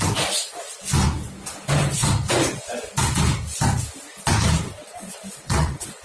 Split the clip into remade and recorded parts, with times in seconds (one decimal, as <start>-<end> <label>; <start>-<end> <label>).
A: 0.0-4.7 recorded; 4.7-6.0 remade

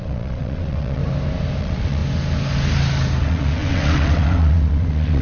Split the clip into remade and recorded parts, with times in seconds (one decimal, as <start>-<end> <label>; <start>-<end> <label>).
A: 0.0-1.0 remade; 1.0-1.6 recorded; 1.6-2.0 remade; 2.0-3.2 recorded; 3.2-5.2 remade

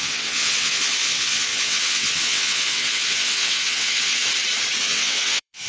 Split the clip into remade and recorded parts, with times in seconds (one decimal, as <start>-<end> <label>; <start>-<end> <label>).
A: 0.0-4.2 remade; 4.2-4.8 recorded; 4.8-5.7 remade

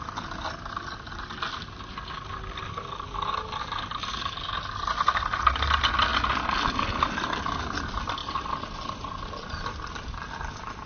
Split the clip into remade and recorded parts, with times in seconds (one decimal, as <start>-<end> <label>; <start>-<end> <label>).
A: 0.0-10.9 recorded

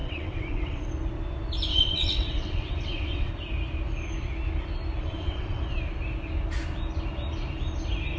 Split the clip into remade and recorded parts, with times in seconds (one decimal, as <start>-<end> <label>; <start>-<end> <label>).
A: 0.0-0.9 remade; 0.9-1.7 recorded; 1.7-3.3 remade; 3.3-5.0 recorded; 5.0-5.6 remade; 5.6-8.2 recorded

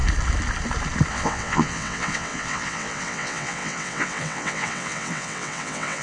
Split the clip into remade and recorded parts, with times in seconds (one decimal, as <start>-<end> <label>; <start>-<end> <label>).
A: 0.0-1.1 recorded; 1.1-6.0 remade

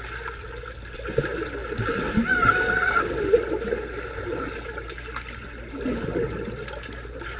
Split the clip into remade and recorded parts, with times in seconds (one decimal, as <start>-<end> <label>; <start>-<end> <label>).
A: 0.0-7.4 recorded